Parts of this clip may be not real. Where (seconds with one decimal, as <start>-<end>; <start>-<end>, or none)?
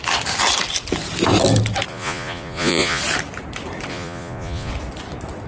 1.9-3.0; 3.9-4.7